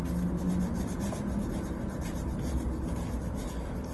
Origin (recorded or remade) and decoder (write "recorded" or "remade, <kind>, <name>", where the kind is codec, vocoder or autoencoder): recorded